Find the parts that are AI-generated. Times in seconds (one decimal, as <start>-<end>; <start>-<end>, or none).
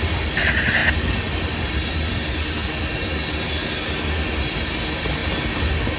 none